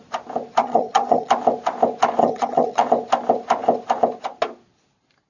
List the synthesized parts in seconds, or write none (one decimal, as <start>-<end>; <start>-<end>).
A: 0.6-1.3; 2.2-2.8